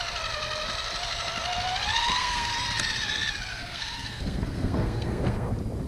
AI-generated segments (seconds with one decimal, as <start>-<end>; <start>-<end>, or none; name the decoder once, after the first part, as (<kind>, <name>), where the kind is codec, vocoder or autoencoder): 2.0-2.5 (codec, SNAC); 3.5-5.5

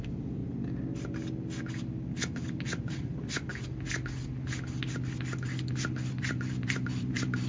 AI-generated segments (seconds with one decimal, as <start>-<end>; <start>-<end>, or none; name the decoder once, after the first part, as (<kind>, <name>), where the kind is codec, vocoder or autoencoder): 0.0-0.4 (vocoder, BigVGAN v2); 2.1-3.5; 6.1-7.5